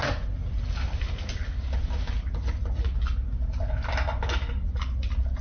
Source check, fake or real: real